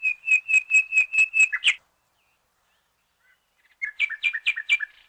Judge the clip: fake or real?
real